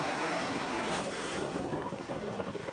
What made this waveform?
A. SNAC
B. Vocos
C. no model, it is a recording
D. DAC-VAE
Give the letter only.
A